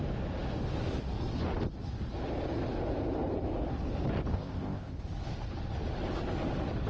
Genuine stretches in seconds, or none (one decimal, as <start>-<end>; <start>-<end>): 0.0-4.3; 4.9-6.9